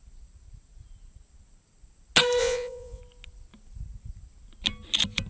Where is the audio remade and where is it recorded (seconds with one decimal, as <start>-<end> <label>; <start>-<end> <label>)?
0.0-2.4 recorded; 2.4-3.0 remade; 3.0-5.3 recorded